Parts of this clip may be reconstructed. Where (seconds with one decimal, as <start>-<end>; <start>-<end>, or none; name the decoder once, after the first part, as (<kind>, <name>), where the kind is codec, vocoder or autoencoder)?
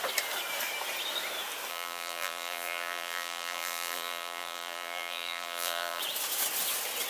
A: 1.7-6.0 (vocoder, BigVGAN v2)